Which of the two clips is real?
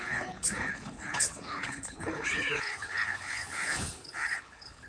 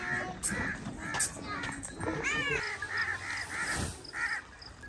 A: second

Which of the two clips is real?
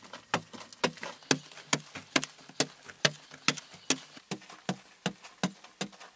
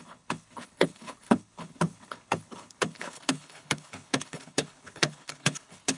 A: first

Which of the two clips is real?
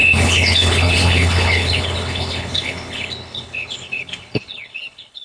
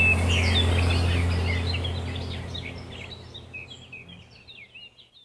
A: second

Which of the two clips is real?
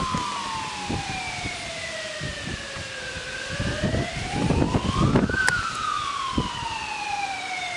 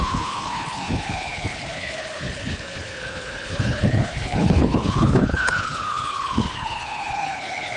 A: first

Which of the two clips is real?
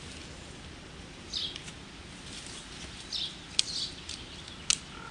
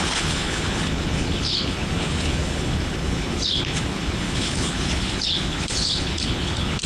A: first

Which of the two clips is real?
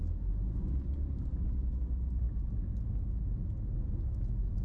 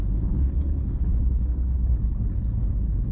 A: first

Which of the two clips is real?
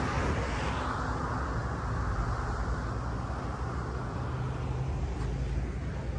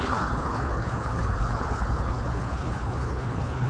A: first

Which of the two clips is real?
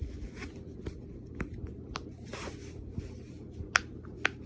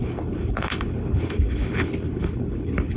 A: first